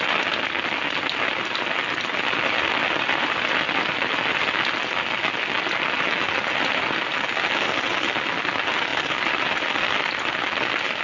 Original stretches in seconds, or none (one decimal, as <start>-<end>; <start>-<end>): 0.0-11.0